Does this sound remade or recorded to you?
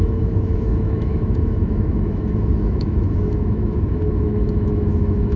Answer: remade